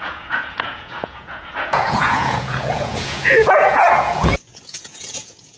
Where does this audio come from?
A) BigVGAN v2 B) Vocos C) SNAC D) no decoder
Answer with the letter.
B